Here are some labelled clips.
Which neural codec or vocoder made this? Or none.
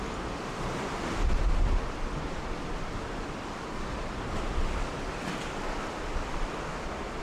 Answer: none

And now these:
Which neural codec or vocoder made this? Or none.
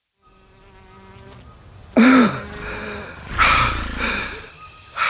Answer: none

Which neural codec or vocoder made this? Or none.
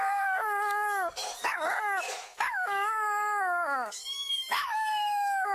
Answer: codec, DAC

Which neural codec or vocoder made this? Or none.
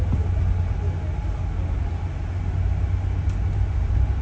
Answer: none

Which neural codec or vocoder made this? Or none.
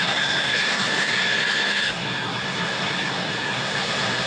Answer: codec, SNAC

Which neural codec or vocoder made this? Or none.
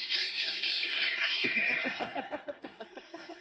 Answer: codec, SNAC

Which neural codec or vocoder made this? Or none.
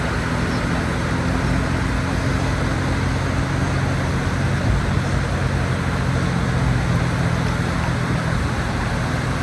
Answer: none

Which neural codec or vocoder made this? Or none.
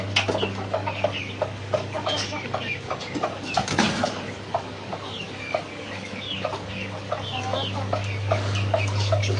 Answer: codec, DAC